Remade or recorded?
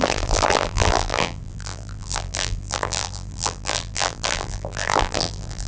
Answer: remade